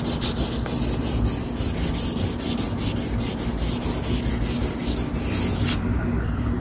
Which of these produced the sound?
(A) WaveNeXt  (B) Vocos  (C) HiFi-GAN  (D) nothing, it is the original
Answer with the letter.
D